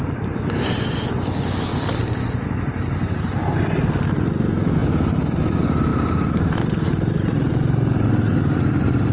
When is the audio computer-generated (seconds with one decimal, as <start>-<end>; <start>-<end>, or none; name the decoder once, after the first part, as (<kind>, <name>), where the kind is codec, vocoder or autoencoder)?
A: 4.8-5.4 (vocoder, BigVGAN v2); 5.9-7.5

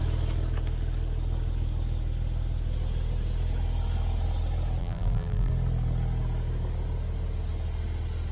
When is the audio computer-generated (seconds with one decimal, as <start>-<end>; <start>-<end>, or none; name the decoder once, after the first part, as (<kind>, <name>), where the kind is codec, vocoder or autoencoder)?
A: 4.8-5.5 (vocoder, BigVGAN v2)